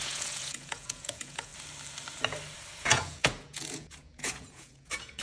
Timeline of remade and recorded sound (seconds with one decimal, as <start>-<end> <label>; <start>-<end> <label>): 0.0-1.5 remade; 1.5-2.8 recorded; 2.8-5.2 remade